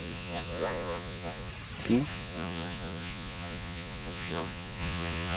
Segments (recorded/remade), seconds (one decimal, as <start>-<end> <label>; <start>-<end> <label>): 0.0-1.5 remade; 1.5-2.1 recorded; 2.1-5.4 remade

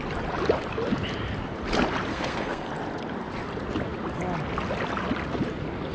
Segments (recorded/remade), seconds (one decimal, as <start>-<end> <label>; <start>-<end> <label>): 0.0-2.1 recorded; 2.1-2.7 remade; 2.7-5.9 recorded